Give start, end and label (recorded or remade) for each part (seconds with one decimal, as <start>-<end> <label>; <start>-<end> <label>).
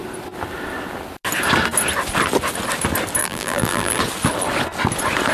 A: 0.0-3.2 recorded; 3.2-4.0 remade; 4.0-5.3 recorded